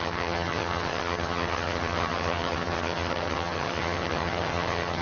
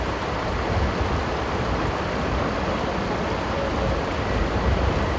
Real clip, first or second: second